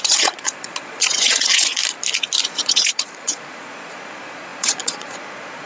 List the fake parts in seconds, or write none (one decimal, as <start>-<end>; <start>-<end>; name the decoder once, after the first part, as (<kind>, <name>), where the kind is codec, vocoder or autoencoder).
0.0-1.8 (vocoder, Vocos); 2.4-5.7